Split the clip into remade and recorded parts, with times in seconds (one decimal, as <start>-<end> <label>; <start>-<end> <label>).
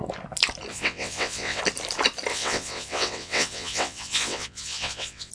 0.0-0.7 recorded; 0.7-1.6 remade; 1.6-2.3 recorded; 2.3-5.3 remade